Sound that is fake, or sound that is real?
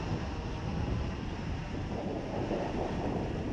fake